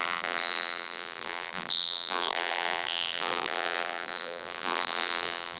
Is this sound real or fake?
fake